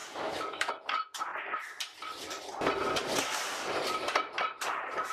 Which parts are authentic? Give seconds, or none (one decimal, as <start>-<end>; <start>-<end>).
0.7-5.1